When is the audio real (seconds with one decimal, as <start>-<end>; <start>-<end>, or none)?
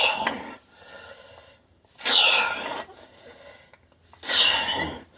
0.0-5.2